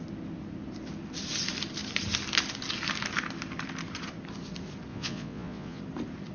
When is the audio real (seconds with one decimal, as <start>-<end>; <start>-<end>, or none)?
0.0-4.9; 5.8-6.3